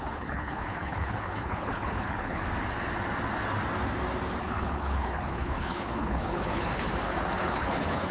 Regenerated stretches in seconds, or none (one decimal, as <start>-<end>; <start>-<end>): 0.0-2.4; 4.4-6.9; 7.4-8.1